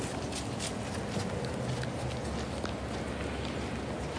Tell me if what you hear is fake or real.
real